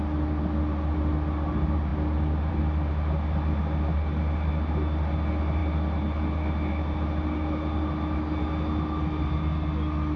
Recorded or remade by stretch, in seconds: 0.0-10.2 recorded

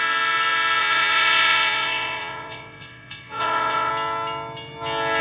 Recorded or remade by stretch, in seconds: 0.0-0.8 recorded; 0.8-3.9 remade; 3.9-5.2 recorded

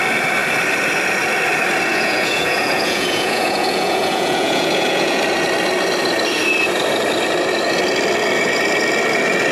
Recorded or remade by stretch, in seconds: 0.0-1.9 recorded; 1.9-5.2 remade; 5.2-9.5 recorded

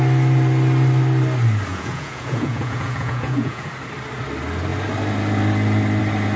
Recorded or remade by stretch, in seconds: 0.0-1.7 recorded; 1.7-3.7 remade; 3.7-6.4 recorded

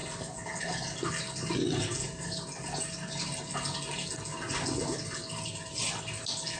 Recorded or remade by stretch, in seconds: 0.0-6.6 recorded

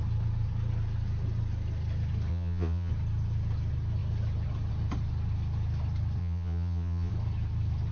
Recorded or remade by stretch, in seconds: 0.0-2.3 recorded; 2.3-2.9 remade; 2.9-6.2 recorded; 6.2-7.1 remade; 7.1-7.9 recorded